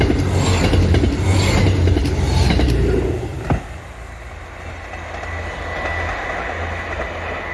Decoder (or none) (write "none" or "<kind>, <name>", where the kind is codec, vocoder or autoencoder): none